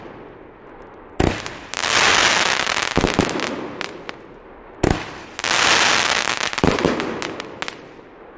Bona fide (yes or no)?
yes